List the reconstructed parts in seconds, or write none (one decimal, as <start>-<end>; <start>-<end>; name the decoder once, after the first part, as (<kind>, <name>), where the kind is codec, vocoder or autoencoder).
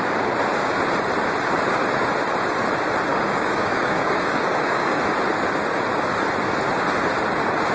3.1-5.0 (codec, DAC)